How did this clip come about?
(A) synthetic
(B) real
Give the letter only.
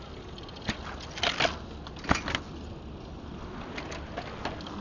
B